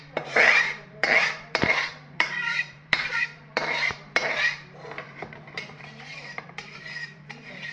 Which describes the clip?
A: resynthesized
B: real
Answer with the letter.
A